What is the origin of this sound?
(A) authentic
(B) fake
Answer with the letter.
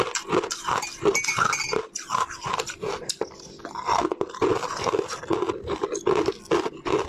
A